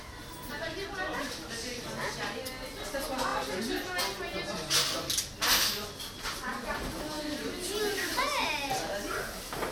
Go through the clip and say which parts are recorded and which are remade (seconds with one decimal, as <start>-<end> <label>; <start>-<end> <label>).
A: 0.0-9.7 recorded